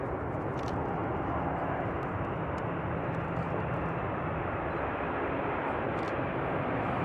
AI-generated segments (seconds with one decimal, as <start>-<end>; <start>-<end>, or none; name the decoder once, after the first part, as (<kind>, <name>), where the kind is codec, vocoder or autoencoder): none